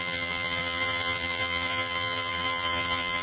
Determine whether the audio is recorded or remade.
remade